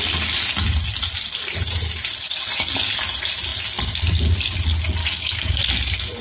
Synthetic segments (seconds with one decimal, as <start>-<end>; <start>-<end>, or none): 5.0-5.6